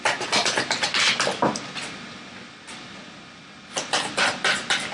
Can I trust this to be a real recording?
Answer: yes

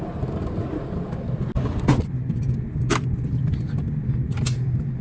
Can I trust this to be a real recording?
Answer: yes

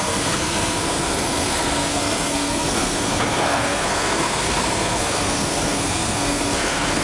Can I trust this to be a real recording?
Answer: no